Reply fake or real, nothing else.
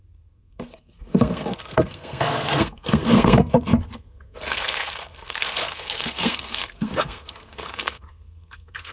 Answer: fake